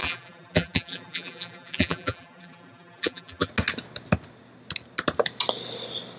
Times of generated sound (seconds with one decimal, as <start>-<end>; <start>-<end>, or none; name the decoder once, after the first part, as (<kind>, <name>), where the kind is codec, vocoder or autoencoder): 0.0-3.5 (vocoder, BigVGAN v2)